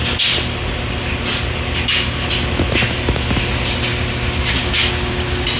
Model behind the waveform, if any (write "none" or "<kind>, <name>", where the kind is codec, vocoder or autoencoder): none